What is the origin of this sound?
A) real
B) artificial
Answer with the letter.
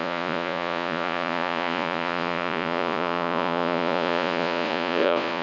B